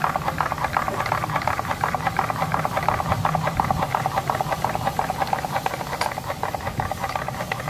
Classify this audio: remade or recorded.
recorded